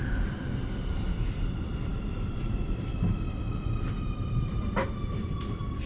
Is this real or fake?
fake